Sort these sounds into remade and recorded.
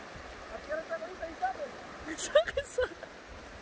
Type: recorded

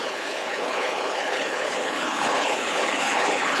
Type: remade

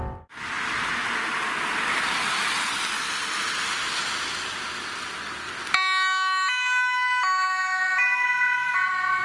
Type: recorded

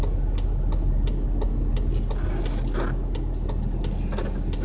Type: recorded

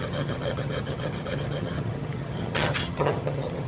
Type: remade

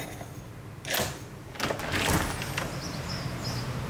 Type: recorded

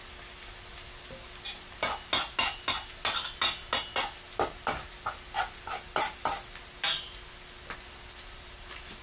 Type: recorded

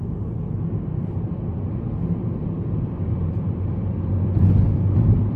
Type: recorded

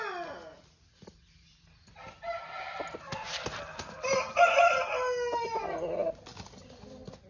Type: recorded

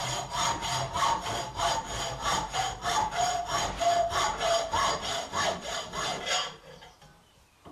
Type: remade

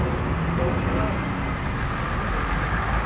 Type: recorded